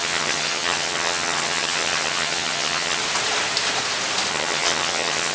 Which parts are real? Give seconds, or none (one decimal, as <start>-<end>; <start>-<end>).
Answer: 3.0-4.3